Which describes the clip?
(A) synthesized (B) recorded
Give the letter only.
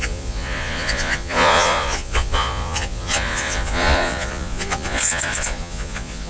A